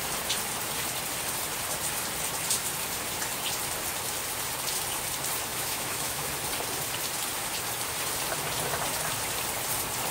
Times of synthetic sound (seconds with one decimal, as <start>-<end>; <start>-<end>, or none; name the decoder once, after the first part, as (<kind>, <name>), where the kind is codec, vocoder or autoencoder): 5.5-6.3 (autoencoder, DAC-VAE)